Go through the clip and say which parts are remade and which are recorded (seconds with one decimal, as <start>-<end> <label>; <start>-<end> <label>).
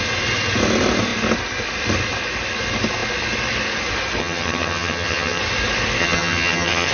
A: 0.0-4.2 recorded; 4.2-5.4 remade; 5.4-6.0 recorded; 6.0-6.9 remade